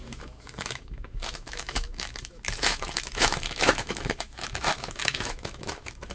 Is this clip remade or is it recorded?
remade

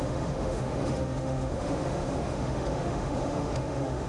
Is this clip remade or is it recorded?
remade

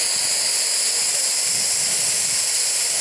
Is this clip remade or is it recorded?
recorded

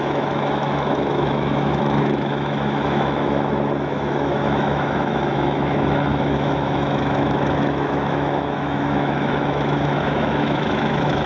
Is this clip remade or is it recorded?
remade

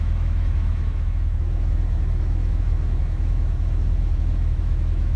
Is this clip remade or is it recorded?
remade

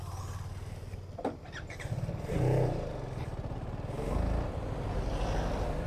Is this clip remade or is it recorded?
recorded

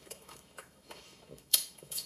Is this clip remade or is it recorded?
remade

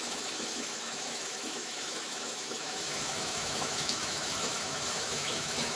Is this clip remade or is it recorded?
remade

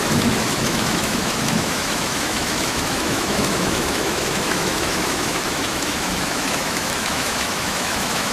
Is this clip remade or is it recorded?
remade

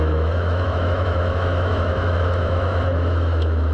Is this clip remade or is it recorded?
remade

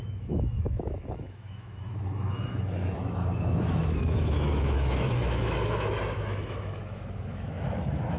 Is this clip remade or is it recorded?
remade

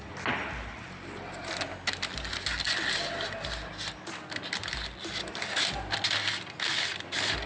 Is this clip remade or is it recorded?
recorded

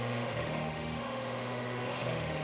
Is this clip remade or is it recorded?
remade